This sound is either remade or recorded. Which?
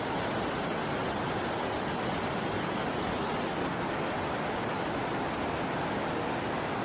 recorded